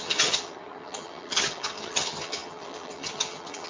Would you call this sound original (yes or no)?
no